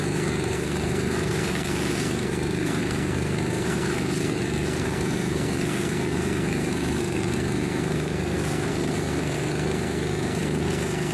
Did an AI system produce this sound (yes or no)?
yes